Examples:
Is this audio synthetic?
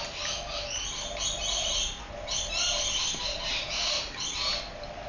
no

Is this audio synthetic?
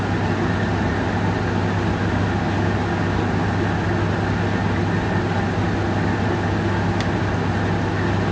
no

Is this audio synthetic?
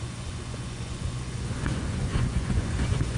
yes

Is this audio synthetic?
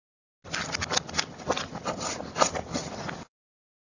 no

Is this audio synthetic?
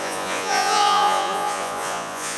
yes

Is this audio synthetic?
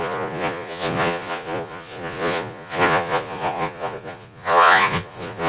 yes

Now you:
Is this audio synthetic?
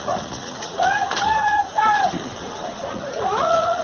yes